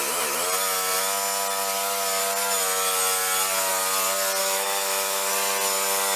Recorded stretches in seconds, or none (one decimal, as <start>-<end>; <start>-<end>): 0.0-4.4; 5.3-6.2